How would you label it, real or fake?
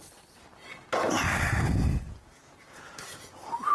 real